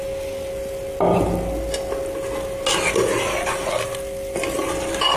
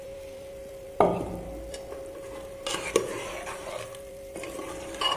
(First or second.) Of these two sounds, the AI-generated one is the second